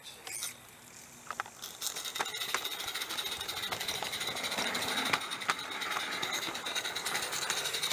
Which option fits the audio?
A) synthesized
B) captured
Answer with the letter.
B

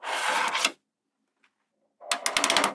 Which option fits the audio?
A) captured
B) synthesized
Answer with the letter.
A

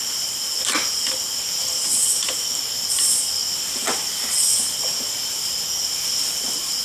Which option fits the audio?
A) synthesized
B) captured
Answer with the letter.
A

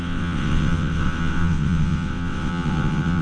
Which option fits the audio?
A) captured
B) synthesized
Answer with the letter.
B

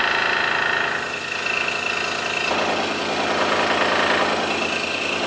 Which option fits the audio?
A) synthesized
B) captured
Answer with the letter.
B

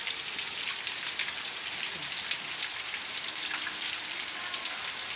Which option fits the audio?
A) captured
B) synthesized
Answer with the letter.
A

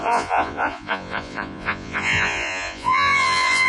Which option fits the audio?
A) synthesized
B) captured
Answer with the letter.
A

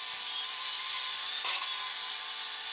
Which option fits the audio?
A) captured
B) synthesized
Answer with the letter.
A